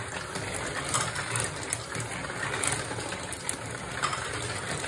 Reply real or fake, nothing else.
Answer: real